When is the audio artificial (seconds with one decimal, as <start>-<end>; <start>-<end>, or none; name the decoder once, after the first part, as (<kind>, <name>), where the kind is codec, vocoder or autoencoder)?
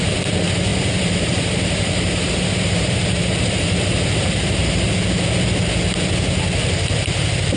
0.7-4.9 (vocoder, BigVGAN v2)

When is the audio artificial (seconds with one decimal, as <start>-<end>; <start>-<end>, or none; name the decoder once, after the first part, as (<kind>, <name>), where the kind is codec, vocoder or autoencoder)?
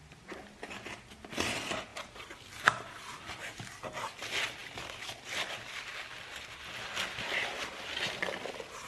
none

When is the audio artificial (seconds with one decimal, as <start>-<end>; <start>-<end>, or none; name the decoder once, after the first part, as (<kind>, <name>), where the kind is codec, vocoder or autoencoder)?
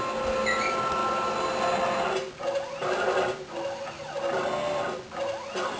1.0-1.7 (vocoder, BigVGAN v2)